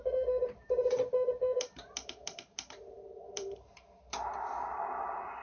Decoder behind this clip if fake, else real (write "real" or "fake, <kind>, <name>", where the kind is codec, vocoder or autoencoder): fake, vocoder, BigVGAN v2